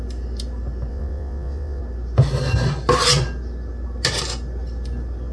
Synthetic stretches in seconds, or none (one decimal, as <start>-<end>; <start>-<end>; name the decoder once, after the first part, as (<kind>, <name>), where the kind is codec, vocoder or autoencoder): 0.9-1.8 (vocoder, WaveNeXt)